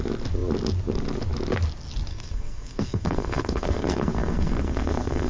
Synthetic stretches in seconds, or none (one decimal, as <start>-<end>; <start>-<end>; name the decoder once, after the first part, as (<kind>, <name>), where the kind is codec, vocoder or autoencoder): 2.1-5.3 (codec, SNAC)